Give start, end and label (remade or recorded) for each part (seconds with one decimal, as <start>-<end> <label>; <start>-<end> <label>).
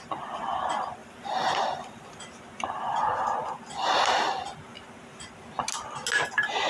0.0-1.0 recorded; 1.0-2.2 remade; 2.2-6.7 recorded